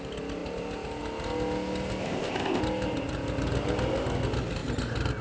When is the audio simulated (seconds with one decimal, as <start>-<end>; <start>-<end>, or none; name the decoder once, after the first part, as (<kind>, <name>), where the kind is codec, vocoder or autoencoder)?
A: 2.0-2.6 (codec, ZipCodec)